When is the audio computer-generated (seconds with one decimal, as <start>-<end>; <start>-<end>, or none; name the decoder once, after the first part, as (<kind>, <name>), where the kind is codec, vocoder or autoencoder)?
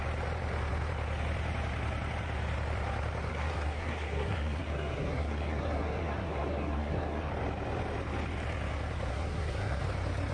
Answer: 3.3-7.3 (codec, SNAC); 9.1-9.8